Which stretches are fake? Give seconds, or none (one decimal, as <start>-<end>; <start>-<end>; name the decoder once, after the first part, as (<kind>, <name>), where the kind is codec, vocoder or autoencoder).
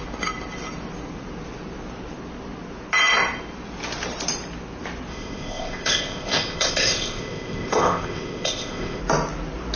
5.1-9.0 (codec, ZipCodec)